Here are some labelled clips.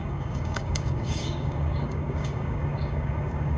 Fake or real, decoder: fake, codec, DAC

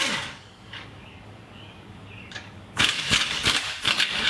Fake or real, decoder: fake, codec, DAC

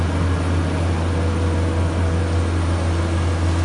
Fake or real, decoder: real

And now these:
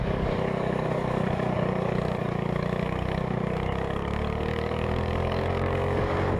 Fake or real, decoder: fake, codec, DAC